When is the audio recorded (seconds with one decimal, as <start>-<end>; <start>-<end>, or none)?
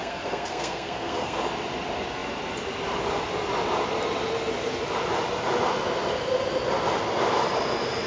1.4-8.1